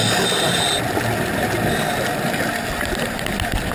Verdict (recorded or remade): recorded